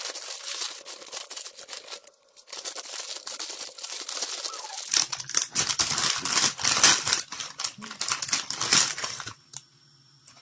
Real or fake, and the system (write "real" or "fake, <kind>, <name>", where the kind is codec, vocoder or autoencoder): real